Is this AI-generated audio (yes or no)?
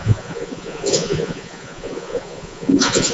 yes